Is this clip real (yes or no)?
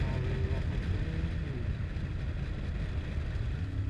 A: yes